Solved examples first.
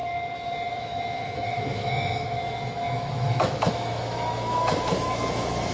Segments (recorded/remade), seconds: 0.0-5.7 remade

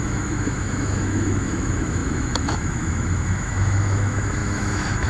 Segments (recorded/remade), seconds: 0.0-5.1 remade

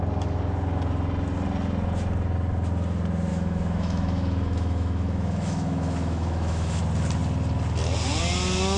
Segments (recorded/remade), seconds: 0.0-3.3 recorded; 3.3-6.8 remade; 6.8-8.8 recorded

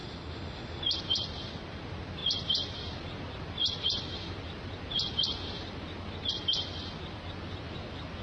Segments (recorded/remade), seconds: 0.0-0.8 remade; 0.8-8.2 recorded